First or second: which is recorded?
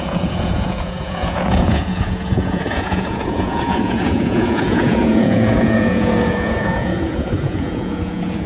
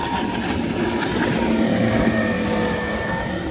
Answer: second